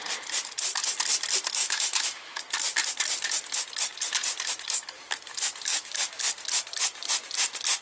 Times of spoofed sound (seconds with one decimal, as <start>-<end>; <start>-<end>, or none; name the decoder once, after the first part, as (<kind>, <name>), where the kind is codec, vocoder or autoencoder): 1.6-2.4 (autoencoder, DAC-VAE); 5.7-6.2